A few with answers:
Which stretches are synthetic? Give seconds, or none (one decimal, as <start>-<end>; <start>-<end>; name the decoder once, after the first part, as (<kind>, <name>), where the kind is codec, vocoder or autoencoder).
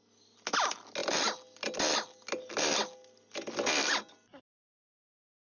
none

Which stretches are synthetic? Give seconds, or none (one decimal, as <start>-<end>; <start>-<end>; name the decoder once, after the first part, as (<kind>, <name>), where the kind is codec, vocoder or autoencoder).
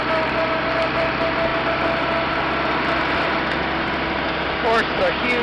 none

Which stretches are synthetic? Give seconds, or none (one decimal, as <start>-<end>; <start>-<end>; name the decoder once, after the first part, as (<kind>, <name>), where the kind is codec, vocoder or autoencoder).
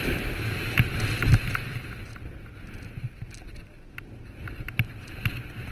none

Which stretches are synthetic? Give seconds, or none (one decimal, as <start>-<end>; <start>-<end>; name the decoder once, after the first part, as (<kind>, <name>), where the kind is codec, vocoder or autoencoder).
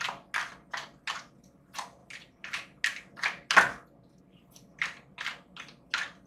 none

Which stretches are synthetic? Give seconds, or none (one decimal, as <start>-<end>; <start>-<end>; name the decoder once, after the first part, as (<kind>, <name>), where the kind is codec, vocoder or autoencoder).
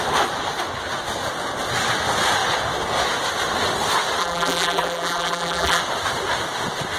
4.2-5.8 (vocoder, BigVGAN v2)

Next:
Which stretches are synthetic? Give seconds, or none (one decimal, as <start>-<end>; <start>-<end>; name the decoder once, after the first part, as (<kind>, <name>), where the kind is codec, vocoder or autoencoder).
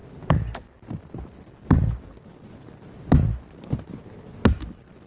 none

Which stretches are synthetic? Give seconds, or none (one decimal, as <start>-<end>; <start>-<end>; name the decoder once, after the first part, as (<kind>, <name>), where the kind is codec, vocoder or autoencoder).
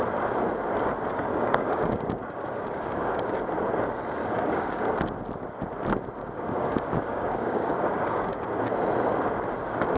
1.3-3.4 (codec, DAC); 4.2-4.9; 6.2-8.6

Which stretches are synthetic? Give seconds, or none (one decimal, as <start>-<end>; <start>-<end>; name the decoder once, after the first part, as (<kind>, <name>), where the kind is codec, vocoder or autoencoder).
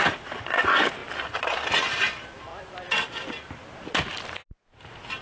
none